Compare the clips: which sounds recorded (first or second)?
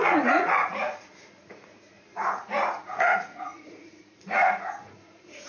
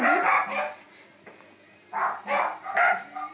second